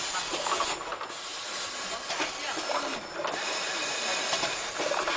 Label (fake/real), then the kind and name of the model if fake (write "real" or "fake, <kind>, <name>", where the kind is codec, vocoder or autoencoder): real